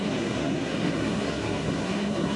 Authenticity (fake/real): fake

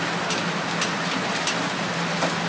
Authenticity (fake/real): real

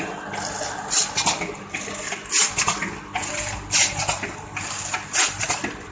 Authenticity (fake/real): real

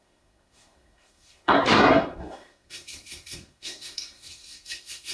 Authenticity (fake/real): fake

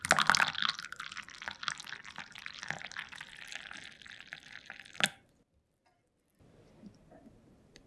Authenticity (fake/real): real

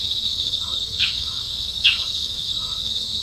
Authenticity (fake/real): fake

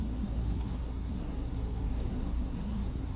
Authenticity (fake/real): fake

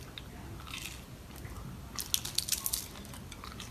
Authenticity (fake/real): real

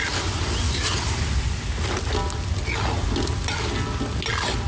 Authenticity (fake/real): real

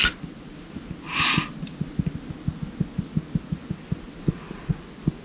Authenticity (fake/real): real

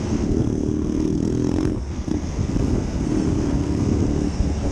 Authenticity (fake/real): fake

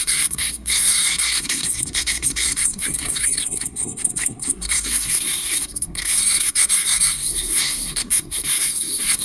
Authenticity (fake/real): fake